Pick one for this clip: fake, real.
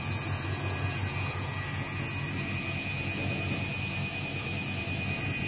real